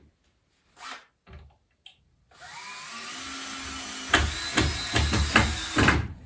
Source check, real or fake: real